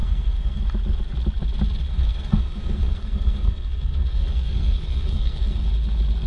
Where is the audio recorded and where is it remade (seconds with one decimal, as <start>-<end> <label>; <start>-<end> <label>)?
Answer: 0.0-0.6 remade; 0.6-1.9 recorded; 1.9-5.7 remade; 5.7-6.3 recorded